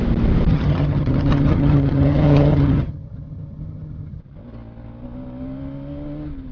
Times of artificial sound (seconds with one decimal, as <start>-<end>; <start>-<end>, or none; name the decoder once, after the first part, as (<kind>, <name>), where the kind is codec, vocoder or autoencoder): 0.5-4.2 (vocoder, HiFi-GAN)